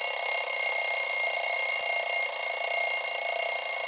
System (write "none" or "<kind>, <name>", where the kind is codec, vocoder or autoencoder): none